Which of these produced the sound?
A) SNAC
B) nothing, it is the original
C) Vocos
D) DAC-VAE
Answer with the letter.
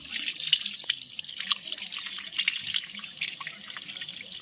B